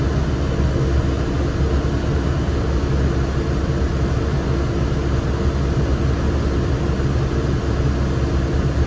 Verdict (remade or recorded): recorded